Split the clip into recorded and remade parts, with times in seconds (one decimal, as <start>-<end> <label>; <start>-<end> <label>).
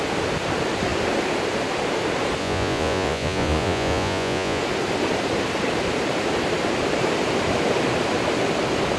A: 0.0-2.4 recorded; 2.4-4.6 remade; 4.6-9.0 recorded